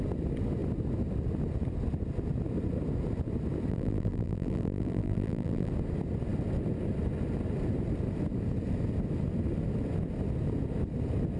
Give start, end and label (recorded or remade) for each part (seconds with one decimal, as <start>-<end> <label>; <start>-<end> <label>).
0.0-3.7 recorded; 3.7-5.7 remade; 5.7-11.4 recorded